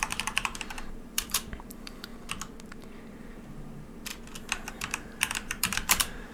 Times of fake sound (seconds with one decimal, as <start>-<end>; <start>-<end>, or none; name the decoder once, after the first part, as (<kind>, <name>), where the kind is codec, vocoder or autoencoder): 0.0-2.1 (vocoder, BigVGAN v2); 3.1-4.1; 4.7-6.3